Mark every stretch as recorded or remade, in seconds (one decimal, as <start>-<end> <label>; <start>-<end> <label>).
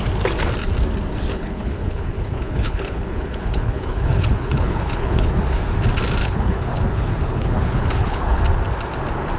0.0-1.3 recorded; 1.3-5.4 remade; 5.4-6.2 recorded; 6.2-8.4 remade; 8.4-9.4 recorded